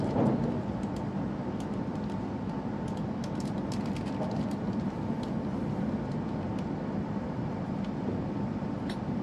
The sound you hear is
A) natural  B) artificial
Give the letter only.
A